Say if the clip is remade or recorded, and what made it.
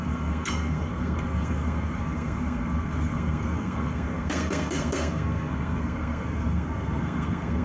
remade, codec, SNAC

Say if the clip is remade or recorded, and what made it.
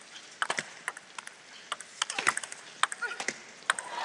recorded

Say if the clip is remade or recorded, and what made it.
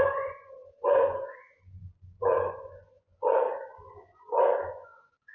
remade, vocoder, Vocos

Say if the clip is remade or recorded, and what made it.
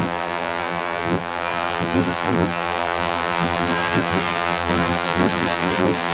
remade, vocoder, BigVGAN v2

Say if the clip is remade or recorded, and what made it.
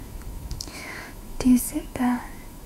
remade, autoencoder, DAC-VAE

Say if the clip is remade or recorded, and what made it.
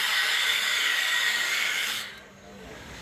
remade, codec, DAC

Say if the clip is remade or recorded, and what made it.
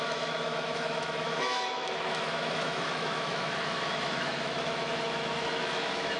remade, autoencoder, DAC-VAE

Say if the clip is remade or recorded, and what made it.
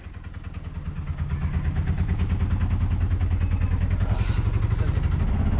recorded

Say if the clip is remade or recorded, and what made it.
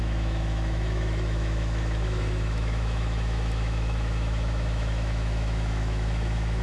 remade, autoencoder, DAC-VAE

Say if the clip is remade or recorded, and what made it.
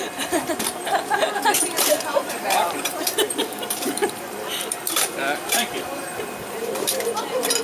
remade, vocoder, BigVGAN v2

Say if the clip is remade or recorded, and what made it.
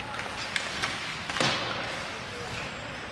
recorded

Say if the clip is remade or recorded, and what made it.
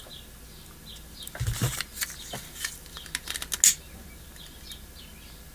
recorded